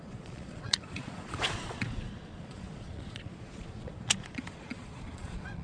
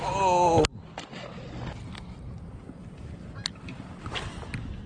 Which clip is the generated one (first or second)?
first